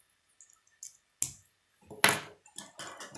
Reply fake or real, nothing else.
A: real